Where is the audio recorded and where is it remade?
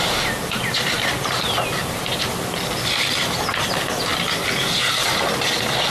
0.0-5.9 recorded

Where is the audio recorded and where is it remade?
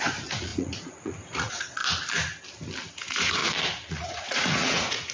0.0-1.8 remade; 1.8-2.9 recorded; 2.9-3.4 remade; 3.4-3.9 recorded; 3.9-5.1 remade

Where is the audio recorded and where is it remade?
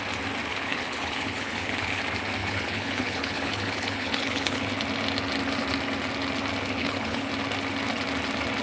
0.0-0.5 recorded; 0.5-2.0 remade; 2.0-2.4 recorded; 2.4-4.6 remade; 4.6-6.8 recorded; 6.8-7.3 remade; 7.3-8.6 recorded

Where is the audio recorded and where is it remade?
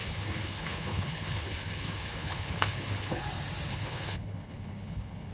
0.0-3.2 remade; 3.2-3.7 recorded; 3.7-5.3 remade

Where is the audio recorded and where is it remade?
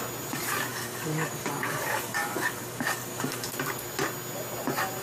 0.0-0.7 recorded; 0.7-3.5 remade; 3.5-5.0 recorded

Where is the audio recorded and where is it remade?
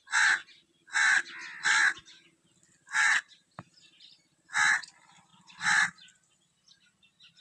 0.0-0.4 recorded; 0.4-2.0 remade; 2.0-3.1 recorded; 3.1-3.7 remade; 3.7-5.3 recorded; 5.3-6.7 remade; 6.7-7.4 recorded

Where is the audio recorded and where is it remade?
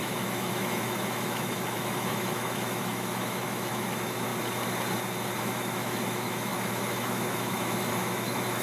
0.0-4.3 remade; 4.3-5.4 recorded; 5.4-8.6 remade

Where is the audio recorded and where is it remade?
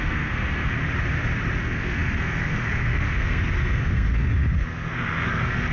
0.0-0.8 remade; 0.8-1.6 recorded; 1.6-5.7 remade